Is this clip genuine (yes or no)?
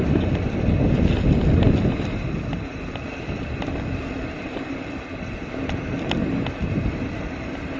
yes